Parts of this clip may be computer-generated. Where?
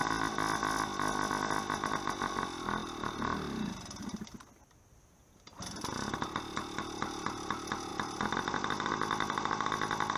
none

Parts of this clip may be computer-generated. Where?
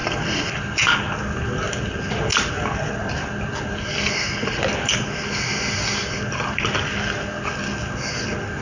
none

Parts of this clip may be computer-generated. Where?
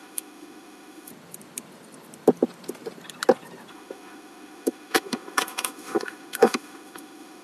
0.0-1.1 (autoencoder, DAC-VAE); 3.7-7.4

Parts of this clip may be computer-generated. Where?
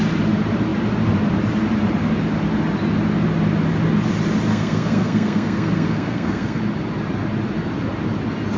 4.5-6.6 (codec, SNAC)